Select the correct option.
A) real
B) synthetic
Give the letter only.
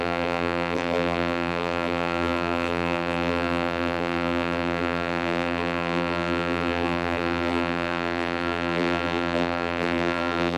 B